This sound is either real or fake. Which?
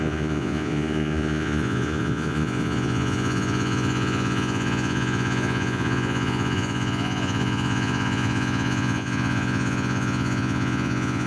fake